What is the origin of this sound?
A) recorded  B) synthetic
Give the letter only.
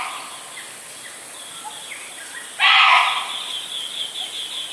A